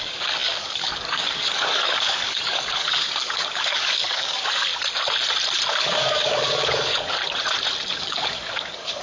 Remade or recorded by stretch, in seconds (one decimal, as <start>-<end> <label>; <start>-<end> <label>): 0.0-4.7 remade; 4.7-5.7 recorded; 5.7-7.2 remade; 7.2-7.9 recorded; 7.9-9.0 remade